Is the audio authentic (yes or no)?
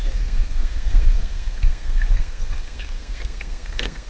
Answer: no